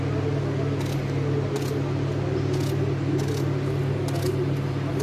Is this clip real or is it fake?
real